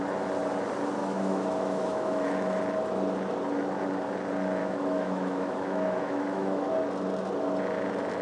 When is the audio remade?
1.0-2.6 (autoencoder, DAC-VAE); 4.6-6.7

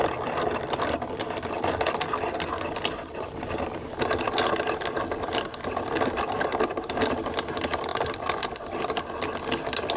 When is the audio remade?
none

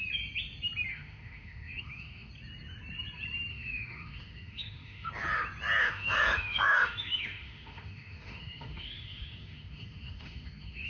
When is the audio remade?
0.9-2.3 (autoencoder, DAC-VAE); 3.5-5.1; 5.8-10.9